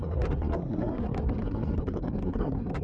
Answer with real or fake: fake